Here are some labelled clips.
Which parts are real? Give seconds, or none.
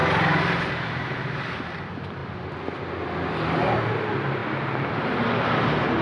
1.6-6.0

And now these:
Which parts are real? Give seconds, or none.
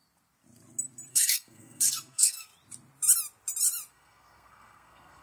0.0-1.1; 2.5-3.9